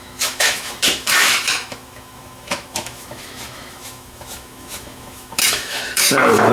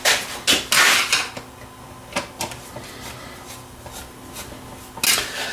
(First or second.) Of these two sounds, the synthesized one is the first